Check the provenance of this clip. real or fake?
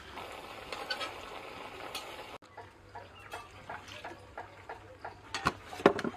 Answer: real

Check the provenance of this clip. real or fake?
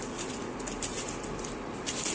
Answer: real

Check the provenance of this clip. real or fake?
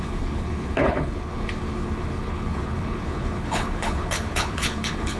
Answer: fake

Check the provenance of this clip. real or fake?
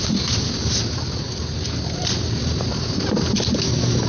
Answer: real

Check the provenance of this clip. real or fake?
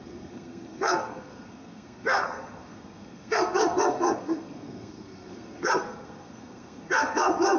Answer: fake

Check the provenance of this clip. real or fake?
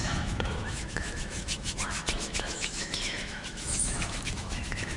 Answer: fake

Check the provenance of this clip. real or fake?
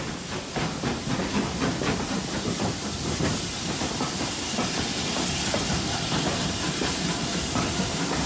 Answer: fake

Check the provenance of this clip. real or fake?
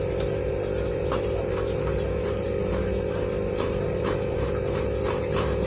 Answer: fake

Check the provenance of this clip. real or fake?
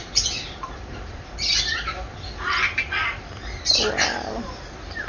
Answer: fake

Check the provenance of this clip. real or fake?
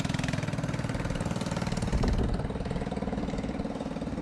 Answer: fake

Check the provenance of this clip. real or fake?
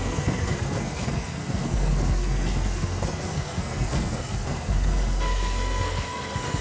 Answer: fake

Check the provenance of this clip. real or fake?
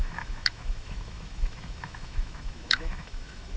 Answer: fake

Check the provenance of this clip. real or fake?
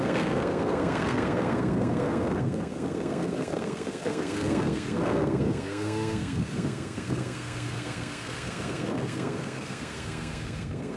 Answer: fake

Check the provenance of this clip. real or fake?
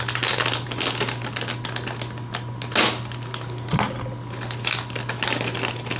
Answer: real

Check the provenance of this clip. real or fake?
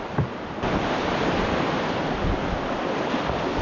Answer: real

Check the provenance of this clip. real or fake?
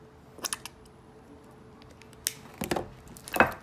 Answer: real